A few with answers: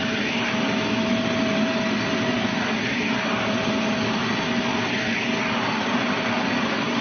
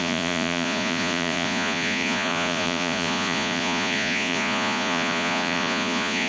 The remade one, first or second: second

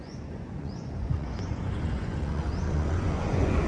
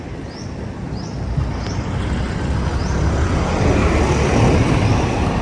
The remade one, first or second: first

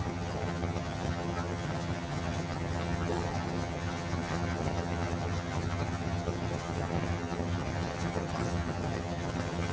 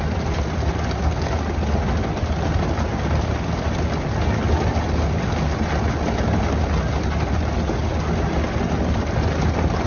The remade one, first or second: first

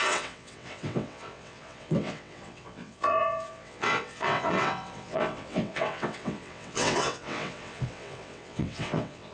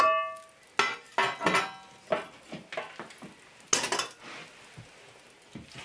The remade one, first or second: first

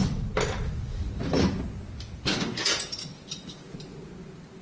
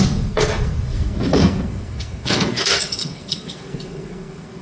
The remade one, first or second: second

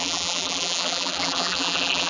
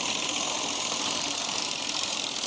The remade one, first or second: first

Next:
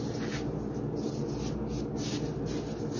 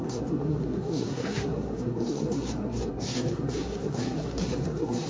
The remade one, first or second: second